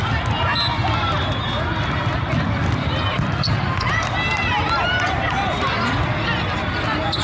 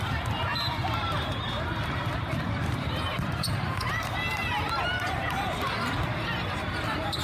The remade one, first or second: second